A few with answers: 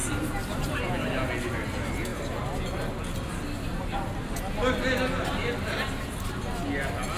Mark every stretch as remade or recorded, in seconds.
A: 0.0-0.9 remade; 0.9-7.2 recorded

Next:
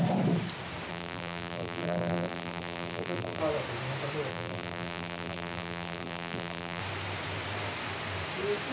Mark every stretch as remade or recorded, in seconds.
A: 0.0-0.9 recorded; 0.9-3.4 remade; 3.4-4.3 recorded; 4.3-6.8 remade; 6.8-8.7 recorded

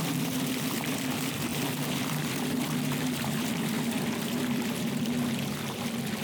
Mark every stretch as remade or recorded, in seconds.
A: 0.0-6.2 remade

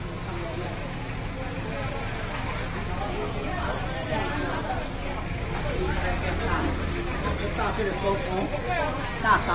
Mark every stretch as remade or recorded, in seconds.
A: 0.0-3.6 recorded; 3.6-4.1 remade; 4.1-9.5 recorded

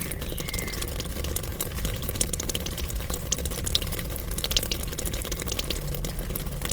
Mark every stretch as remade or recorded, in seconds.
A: 0.0-1.5 recorded; 1.5-5.5 remade; 5.5-6.7 recorded

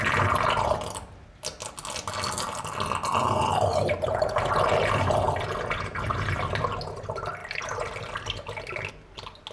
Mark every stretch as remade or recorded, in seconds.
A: 0.0-7.4 recorded; 7.4-8.9 remade; 8.9-9.5 recorded

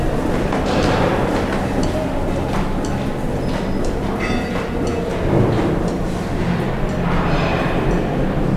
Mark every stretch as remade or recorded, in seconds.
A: 0.0-8.6 recorded